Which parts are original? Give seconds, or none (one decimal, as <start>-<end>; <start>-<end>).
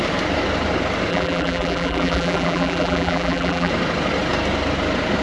0.0-1.1; 3.7-5.2